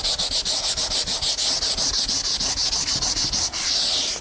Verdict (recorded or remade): recorded